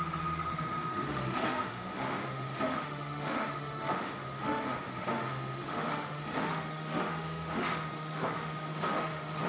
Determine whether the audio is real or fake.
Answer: fake